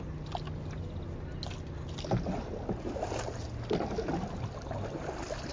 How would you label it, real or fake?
real